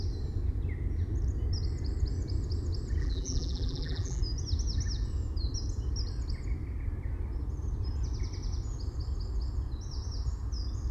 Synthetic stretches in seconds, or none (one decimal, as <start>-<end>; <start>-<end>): 3.0-4.2